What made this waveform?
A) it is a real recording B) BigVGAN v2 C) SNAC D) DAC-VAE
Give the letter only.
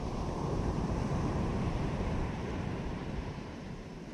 B